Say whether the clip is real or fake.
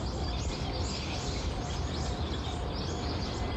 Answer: real